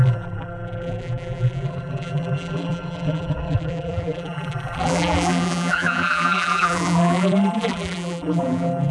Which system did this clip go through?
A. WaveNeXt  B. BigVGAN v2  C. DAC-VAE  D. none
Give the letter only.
B